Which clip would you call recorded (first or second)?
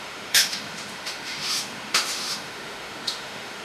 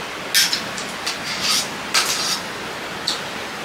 second